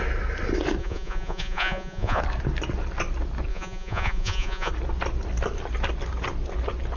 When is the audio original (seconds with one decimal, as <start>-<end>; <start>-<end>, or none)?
0.0-0.8; 2.2-3.5; 4.7-7.0